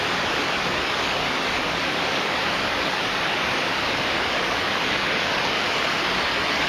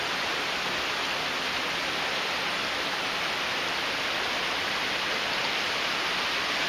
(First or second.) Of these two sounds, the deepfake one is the first